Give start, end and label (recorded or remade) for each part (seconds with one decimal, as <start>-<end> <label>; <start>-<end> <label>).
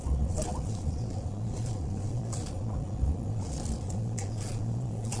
0.0-5.2 remade